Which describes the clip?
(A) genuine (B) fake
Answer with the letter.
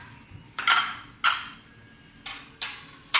A